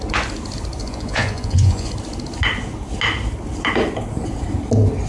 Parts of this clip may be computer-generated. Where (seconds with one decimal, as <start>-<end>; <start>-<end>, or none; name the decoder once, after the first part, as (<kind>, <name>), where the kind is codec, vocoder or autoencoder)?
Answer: 0.8-1.9 (vocoder, Vocos)